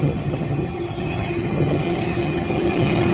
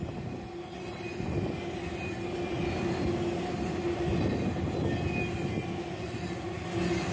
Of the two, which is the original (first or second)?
second